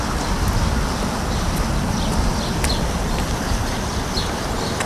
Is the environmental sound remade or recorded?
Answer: recorded